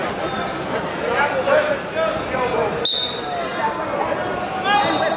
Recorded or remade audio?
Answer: recorded